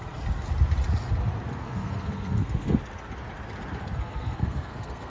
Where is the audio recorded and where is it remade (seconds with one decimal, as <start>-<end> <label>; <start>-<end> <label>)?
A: 0.0-1.6 recorded; 1.6-2.8 remade; 2.8-3.8 recorded; 3.8-5.1 remade